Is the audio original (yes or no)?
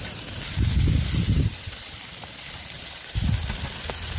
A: no